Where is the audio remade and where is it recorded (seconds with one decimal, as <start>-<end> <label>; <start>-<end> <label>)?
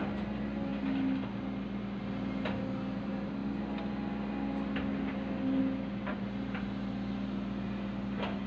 0.0-8.5 recorded